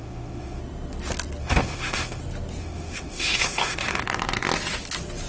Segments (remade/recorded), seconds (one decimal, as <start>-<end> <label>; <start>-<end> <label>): 0.0-0.6 remade; 0.6-1.4 recorded; 1.4-2.2 remade; 2.2-2.6 recorded; 2.6-4.0 remade; 4.0-5.3 recorded